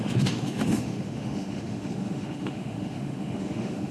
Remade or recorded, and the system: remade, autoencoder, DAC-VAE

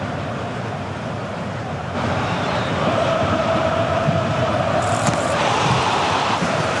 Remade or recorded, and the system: remade, vocoder, BigVGAN v2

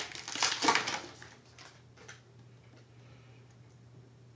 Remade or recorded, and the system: recorded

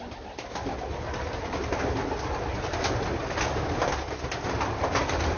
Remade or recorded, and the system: recorded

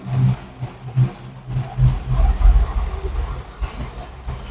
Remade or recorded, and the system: recorded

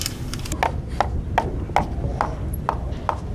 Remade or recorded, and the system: recorded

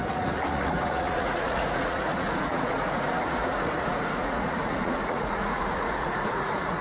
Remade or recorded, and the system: remade, vocoder, Vocos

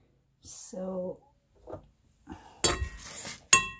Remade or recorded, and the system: recorded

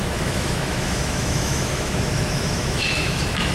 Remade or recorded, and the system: remade, autoencoder, DAC-VAE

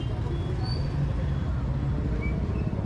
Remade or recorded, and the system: recorded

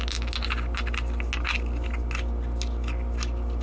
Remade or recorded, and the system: recorded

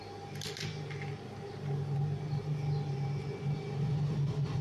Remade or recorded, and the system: recorded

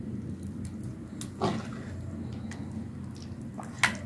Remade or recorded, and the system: recorded